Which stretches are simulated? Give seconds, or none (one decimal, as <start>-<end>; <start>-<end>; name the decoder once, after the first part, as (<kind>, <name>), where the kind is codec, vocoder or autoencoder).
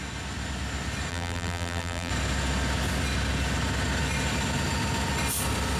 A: 1.1-2.1 (vocoder, BigVGAN v2)